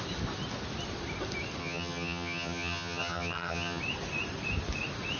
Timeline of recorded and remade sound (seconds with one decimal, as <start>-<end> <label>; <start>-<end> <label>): 0.0-1.6 recorded; 1.6-3.8 remade; 3.8-5.2 recorded